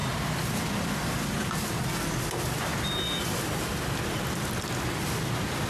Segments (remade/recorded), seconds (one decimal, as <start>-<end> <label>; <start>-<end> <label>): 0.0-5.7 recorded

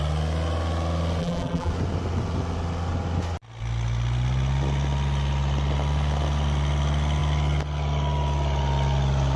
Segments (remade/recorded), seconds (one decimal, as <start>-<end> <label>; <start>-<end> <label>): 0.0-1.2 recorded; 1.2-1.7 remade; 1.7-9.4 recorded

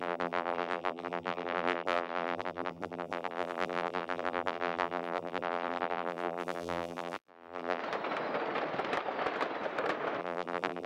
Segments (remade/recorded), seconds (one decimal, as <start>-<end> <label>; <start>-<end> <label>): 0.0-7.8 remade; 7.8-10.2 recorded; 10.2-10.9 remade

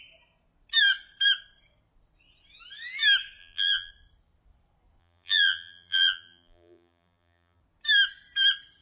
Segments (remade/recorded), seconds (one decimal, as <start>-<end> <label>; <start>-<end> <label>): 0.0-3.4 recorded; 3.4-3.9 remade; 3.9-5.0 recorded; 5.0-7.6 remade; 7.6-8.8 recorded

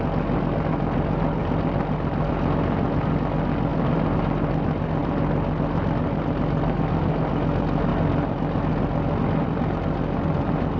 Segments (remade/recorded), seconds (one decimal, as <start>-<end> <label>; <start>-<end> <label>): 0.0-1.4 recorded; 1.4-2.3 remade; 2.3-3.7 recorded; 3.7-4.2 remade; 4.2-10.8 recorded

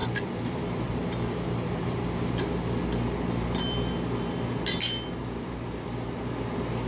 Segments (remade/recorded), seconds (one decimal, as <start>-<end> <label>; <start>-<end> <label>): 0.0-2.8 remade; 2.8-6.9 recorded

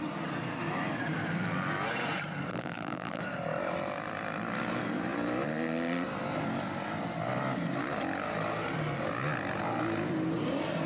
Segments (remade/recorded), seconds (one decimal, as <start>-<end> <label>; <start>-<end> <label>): 0.0-2.5 recorded; 2.5-3.2 remade; 3.2-10.9 recorded

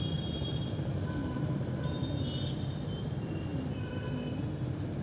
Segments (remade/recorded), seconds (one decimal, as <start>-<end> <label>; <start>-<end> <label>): 0.0-1.2 recorded; 1.2-2.1 remade; 2.1-5.0 recorded